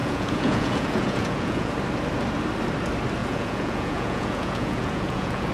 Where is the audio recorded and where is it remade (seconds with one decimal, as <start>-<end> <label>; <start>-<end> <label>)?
0.0-1.7 remade; 1.7-3.2 recorded; 3.2-5.5 remade